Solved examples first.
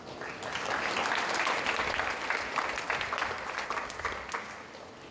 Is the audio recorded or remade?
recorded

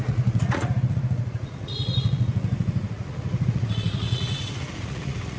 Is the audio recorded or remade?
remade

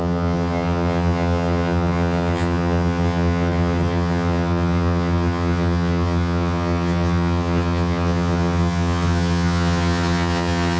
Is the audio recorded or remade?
remade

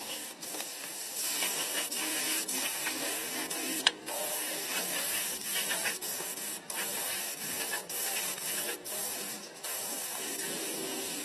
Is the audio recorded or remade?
remade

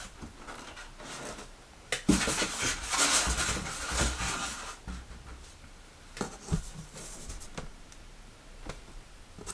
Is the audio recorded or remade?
recorded